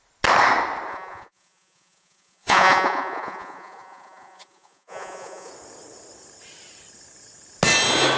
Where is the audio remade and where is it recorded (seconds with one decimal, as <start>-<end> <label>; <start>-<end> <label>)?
0.0-0.9 recorded; 0.9-5.5 remade; 5.5-8.2 recorded